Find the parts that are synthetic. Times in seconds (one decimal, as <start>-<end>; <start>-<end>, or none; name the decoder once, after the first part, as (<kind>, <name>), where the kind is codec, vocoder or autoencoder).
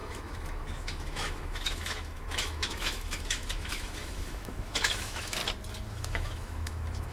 0.0-5.4 (autoencoder, DAC-VAE); 5.9-7.1